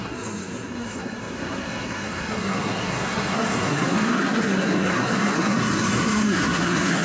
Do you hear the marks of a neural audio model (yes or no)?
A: yes